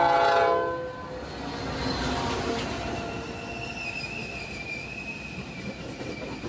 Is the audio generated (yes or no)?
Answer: no